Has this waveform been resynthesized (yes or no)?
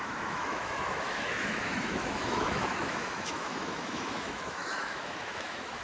yes